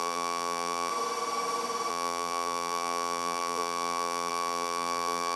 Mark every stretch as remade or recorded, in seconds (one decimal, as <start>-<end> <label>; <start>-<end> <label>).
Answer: 0.0-0.9 remade; 0.9-1.9 recorded; 1.9-5.4 remade